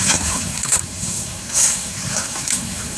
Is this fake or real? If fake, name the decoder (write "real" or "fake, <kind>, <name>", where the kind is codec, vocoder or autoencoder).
fake, codec, SNAC